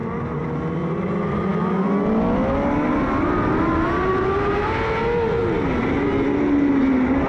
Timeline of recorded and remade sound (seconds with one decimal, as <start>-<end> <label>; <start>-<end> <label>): 0.0-7.3 recorded